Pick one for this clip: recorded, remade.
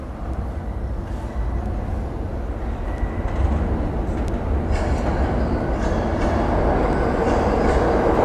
recorded